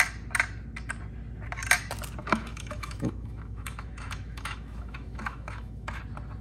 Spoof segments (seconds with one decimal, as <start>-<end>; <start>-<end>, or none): 2.2-6.0